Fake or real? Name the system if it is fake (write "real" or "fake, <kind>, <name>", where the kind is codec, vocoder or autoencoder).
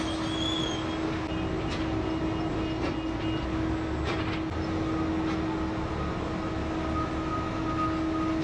real